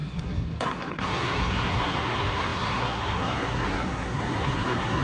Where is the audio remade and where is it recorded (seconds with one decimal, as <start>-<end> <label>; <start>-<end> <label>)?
0.0-5.0 remade